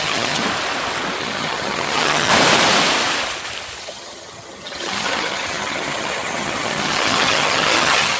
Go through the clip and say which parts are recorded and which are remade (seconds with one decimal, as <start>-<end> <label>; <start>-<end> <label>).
0.0-0.4 remade; 0.4-1.2 recorded; 1.2-2.3 remade; 2.3-3.8 recorded; 3.8-8.2 remade